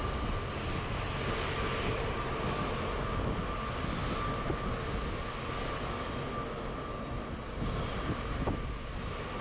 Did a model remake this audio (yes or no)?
no